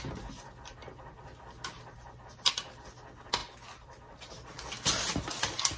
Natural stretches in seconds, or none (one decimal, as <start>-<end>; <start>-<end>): 0.0-5.8